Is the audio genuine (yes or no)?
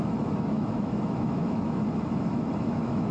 no